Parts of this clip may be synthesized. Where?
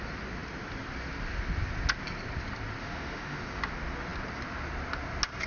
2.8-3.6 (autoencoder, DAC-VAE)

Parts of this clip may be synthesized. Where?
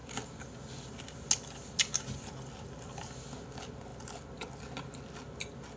none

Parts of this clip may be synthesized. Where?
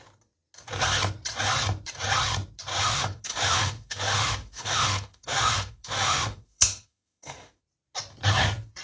2.7-7.6 (autoencoder, DAC-VAE)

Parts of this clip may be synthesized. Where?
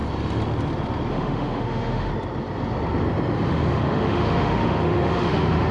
1.1-2.1 (autoencoder, DAC-VAE); 3.5-5.7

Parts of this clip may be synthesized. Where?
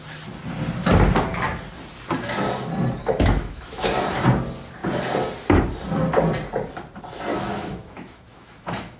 3.0-4.0 (autoencoder, DAC-VAE); 7.3-9.0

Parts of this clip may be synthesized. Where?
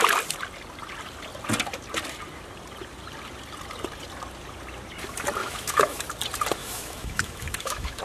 5.4-6.0 (autoencoder, DAC-VAE); 6.6-8.0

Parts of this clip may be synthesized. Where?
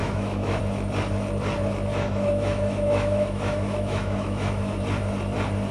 0.0-0.6 (autoencoder, DAC-VAE); 1.9-4.8